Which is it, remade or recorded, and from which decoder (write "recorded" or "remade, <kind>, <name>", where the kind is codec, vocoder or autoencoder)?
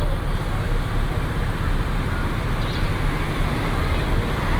recorded